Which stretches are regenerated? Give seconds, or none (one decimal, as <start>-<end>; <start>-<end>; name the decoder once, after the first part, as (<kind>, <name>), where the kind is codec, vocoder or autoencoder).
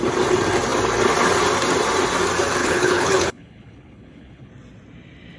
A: 2.6-4.5 (codec, HILCodec)